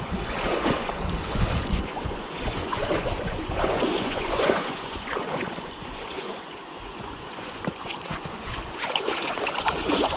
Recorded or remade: remade